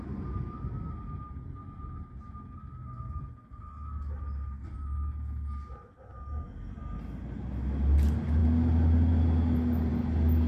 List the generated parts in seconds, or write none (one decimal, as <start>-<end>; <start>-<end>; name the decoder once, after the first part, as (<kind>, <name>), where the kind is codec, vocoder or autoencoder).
none